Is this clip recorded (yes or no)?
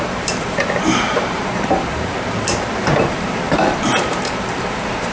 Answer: no